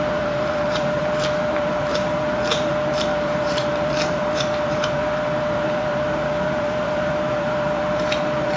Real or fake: fake